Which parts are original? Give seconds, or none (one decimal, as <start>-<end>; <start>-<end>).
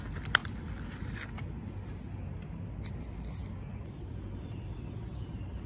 0.0-5.1